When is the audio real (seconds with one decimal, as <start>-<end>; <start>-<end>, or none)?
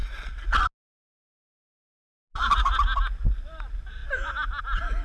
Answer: 0.0-5.0